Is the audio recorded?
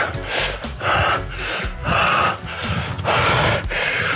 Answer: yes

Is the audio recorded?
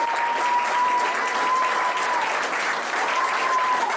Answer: yes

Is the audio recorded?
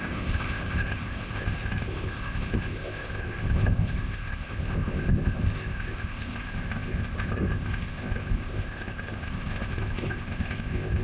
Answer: no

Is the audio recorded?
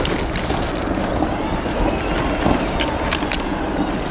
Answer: yes